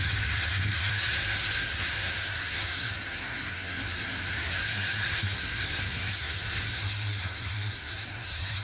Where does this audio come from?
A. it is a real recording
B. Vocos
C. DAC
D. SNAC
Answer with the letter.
D